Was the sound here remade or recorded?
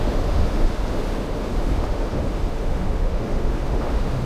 remade